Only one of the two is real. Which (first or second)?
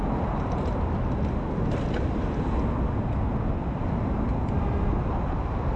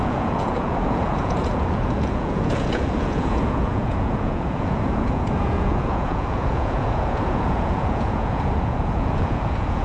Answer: first